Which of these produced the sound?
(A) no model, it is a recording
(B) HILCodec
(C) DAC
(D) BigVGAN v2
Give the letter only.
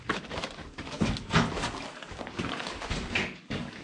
C